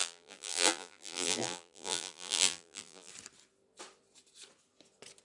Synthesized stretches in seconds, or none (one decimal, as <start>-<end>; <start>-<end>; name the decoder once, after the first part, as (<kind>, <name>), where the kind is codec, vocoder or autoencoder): 0.0-3.1 (vocoder, BigVGAN v2)